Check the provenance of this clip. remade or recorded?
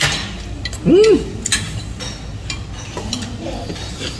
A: recorded